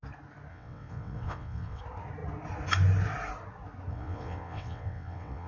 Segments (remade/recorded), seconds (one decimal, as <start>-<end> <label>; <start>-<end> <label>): 0.0-0.5 recorded; 0.5-1.8 remade; 1.8-3.9 recorded; 3.9-5.5 remade